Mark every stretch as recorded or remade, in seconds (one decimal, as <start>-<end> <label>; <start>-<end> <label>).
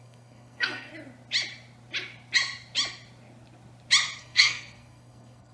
0.0-0.9 remade; 0.9-4.2 recorded; 4.2-5.5 remade